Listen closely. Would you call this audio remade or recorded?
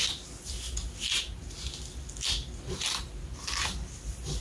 recorded